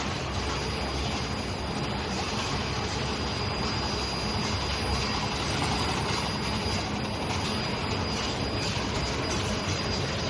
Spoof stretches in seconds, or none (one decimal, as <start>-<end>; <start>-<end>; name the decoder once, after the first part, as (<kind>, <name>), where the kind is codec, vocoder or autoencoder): 7.8-10.3 (vocoder, BigVGAN v2)